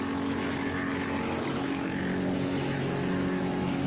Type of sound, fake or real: fake